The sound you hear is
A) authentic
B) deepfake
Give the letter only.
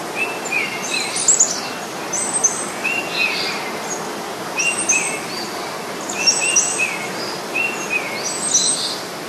A